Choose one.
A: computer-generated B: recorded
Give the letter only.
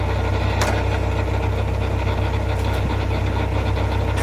B